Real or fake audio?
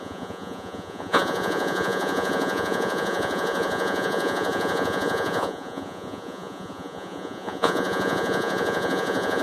fake